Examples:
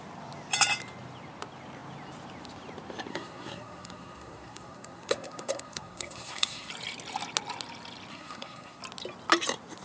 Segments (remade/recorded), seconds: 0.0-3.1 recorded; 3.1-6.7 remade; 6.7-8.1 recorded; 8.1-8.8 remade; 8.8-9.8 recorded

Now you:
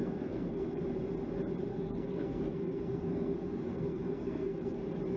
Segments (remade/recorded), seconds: 0.0-0.8 remade; 0.8-1.7 recorded; 1.7-4.8 remade; 4.8-5.2 recorded

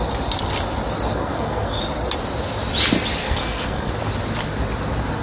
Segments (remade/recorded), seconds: 0.0-1.1 recorded; 1.1-1.8 remade; 1.8-3.2 recorded; 3.2-3.9 remade; 3.9-5.2 recorded

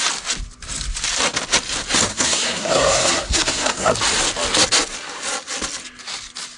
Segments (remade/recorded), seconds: 0.0-2.1 recorded; 2.1-3.9 remade; 3.9-6.6 recorded

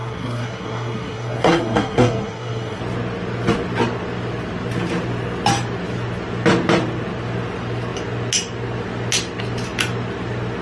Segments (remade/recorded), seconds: 0.0-2.8 remade; 2.8-10.6 recorded